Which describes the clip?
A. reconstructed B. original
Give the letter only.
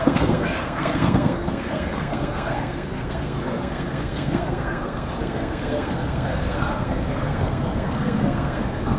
A